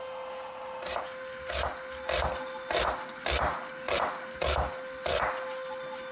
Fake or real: real